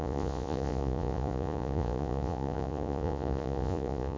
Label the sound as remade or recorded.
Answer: remade